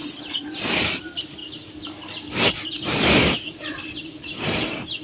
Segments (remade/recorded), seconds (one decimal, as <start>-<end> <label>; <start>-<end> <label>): 0.0-1.4 remade; 1.4-2.7 recorded; 2.7-5.0 remade